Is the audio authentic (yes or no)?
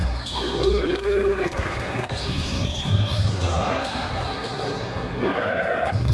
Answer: no